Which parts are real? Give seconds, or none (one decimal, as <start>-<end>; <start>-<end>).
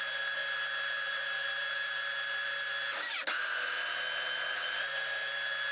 0.4-1.1; 1.9-4.8; 5.2-5.7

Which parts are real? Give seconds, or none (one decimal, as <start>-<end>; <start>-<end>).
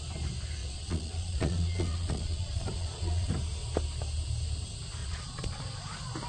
0.0-0.6; 3.3-5.0; 5.6-6.3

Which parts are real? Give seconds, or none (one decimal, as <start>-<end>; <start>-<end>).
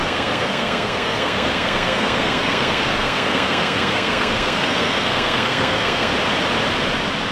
6.1-7.3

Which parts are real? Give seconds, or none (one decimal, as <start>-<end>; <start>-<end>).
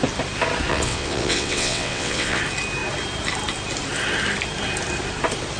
0.0-0.7; 2.4-5.6